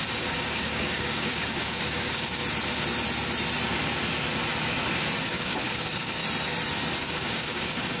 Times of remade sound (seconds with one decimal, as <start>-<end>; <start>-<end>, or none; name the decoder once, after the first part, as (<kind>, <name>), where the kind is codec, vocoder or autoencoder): 0.0-2.4 (codec, DAC); 5.3-6.2; 7.0-8.0